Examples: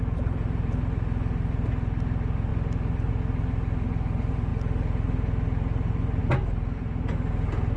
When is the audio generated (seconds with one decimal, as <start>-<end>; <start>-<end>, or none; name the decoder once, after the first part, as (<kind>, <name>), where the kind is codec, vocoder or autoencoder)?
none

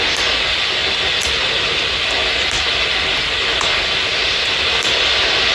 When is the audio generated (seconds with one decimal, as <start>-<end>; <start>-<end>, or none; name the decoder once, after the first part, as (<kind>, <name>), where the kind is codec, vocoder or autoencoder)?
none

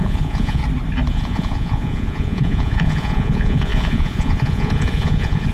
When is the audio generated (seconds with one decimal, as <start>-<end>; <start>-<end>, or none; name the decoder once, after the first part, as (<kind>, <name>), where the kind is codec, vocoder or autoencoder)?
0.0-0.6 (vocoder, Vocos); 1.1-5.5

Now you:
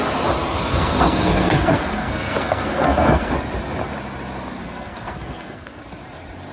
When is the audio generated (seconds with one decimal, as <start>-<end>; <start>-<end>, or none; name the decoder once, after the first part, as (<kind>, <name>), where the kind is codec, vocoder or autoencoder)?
0.7-3.3 (codec, SNAC); 4.6-5.8